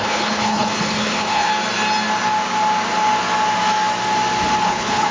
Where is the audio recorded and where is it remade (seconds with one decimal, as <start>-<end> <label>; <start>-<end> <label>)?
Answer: 0.0-1.5 remade; 1.5-4.6 recorded; 4.6-5.1 remade